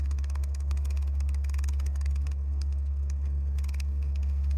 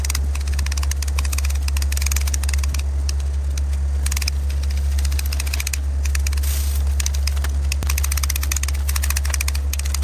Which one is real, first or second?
second